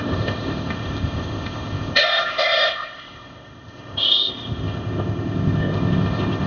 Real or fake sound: fake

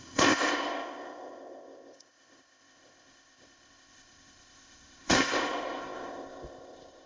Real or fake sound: fake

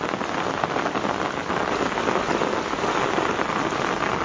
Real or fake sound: real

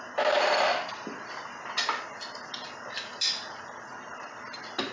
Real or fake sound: real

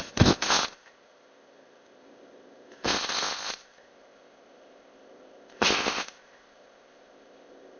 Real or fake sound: fake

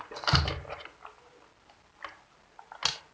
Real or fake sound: real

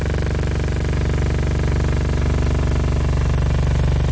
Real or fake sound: real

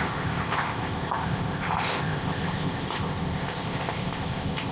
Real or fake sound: fake